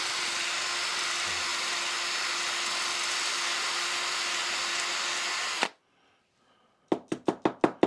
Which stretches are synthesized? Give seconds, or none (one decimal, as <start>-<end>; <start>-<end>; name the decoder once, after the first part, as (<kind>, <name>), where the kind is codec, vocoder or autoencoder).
none